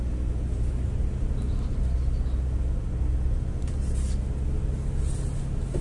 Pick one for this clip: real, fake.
real